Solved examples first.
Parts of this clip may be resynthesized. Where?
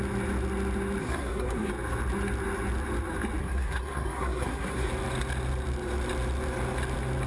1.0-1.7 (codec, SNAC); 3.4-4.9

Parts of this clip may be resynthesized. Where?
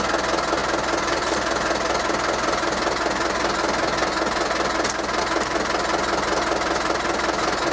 none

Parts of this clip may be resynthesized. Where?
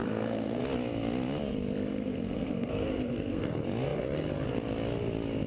0.0-0.6 (codec, SNAC); 1.9-3.5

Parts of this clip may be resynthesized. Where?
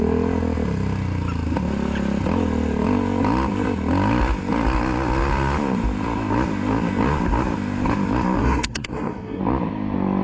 8.4-9.4 (codec, SNAC)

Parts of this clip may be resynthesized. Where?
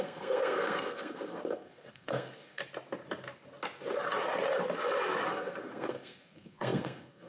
0.0-2.6 (codec, SNAC); 5.3-7.3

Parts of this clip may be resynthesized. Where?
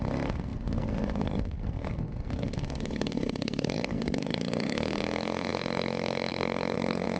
0.0-7.2 (codec, SNAC)